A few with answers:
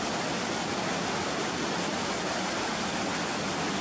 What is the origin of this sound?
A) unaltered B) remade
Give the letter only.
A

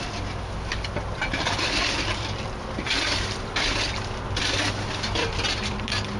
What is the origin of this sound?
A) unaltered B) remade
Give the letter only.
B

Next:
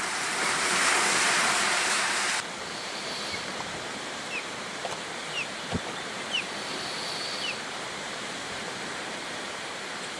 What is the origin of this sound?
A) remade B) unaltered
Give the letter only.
A